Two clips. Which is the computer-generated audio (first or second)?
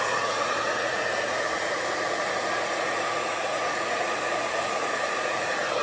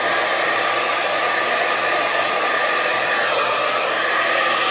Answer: first